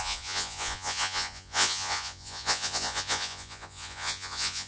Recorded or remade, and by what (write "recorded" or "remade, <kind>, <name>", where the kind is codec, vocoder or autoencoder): remade, vocoder, Vocos